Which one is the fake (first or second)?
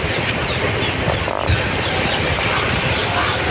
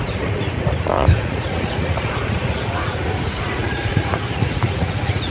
second